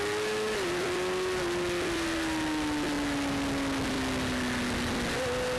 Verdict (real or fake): real